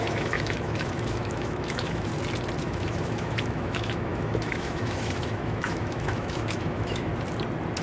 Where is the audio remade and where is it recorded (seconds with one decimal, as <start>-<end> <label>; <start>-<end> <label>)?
0.0-2.1 remade; 2.1-2.6 recorded; 2.6-7.1 remade; 7.1-7.8 recorded